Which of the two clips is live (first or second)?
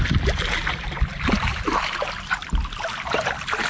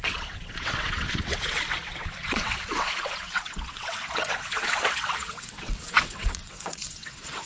first